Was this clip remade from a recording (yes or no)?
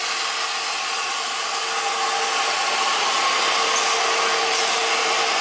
no